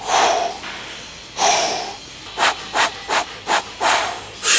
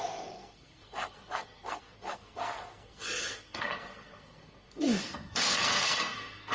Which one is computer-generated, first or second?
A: second